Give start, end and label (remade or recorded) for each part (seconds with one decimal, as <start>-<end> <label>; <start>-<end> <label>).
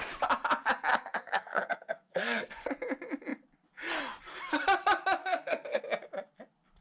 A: 0.0-0.9 recorded; 0.9-2.7 remade; 2.7-5.2 recorded; 5.2-5.8 remade; 5.8-6.8 recorded